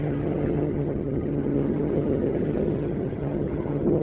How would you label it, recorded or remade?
remade